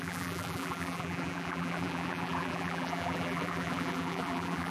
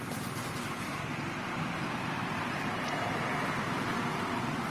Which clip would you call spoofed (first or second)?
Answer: first